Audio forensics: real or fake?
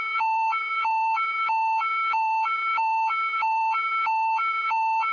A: fake